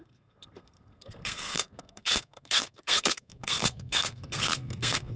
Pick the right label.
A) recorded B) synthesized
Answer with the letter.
B